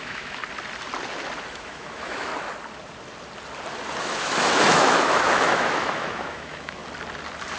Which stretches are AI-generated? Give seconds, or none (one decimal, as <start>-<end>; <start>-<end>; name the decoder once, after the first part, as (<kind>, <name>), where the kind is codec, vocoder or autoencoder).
0.0-0.4 (autoencoder, DAC-VAE); 1.5-2.3; 4.0-6.8